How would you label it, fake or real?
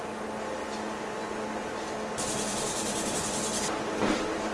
real